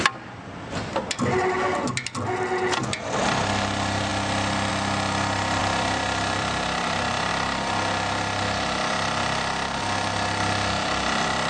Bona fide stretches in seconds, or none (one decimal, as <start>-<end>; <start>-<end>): 0.0-4.1; 4.7-5.6; 7.3-11.5